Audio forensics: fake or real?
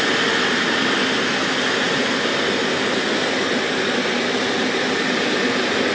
real